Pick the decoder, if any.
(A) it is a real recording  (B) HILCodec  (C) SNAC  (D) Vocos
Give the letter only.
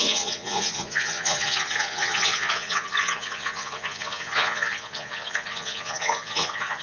D